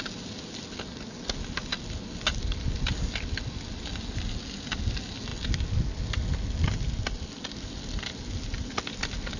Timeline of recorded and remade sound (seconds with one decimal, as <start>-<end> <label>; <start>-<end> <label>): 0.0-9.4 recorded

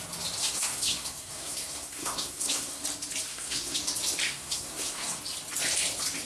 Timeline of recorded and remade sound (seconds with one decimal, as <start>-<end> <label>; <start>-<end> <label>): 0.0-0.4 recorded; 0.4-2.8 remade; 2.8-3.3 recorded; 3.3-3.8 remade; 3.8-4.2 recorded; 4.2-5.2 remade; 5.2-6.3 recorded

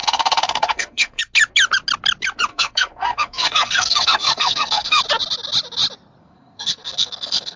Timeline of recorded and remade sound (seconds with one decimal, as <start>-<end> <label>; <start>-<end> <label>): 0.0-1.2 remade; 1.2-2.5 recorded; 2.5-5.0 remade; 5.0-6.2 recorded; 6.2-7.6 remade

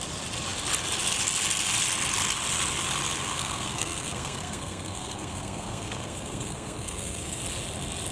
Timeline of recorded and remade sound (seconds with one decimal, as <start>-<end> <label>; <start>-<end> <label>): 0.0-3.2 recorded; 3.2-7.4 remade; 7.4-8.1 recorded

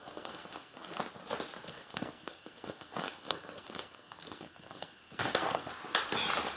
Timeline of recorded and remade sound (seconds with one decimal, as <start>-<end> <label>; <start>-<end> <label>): 0.0-1.0 remade; 1.0-1.7 recorded; 1.7-5.7 remade; 5.7-6.6 recorded

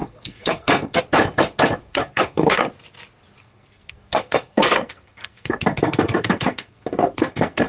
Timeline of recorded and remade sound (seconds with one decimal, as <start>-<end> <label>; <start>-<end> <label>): 0.0-1.0 remade; 1.0-1.8 recorded; 1.8-2.6 remade; 2.6-3.4 recorded; 3.4-7.7 remade

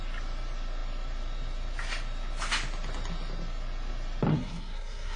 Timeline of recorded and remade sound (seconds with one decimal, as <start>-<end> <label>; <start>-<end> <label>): 0.0-4.3 recorded; 4.3-5.2 remade